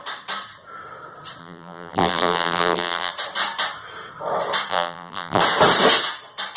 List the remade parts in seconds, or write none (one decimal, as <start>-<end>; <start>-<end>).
1.4-3.1; 4.7-5.4